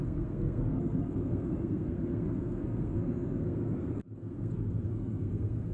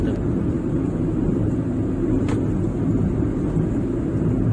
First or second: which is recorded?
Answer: second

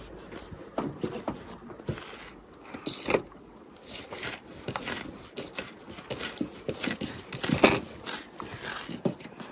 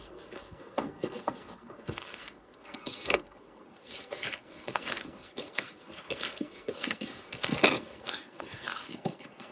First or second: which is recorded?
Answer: first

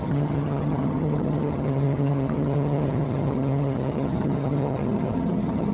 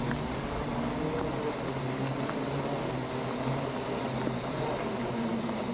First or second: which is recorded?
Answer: second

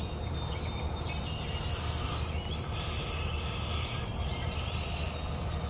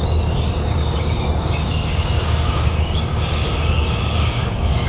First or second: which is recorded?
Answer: first